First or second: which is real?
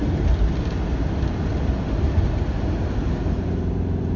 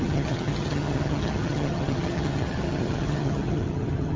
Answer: first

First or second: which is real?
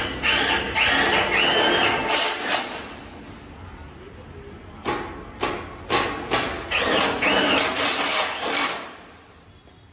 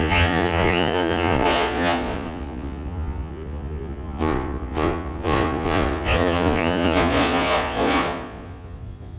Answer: first